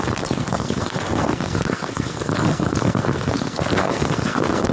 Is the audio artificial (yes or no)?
yes